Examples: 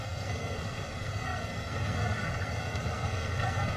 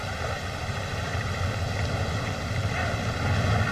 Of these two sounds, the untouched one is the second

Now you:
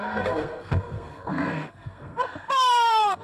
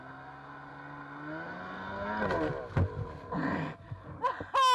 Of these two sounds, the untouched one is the second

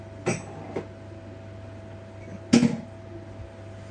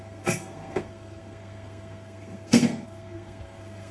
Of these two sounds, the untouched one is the first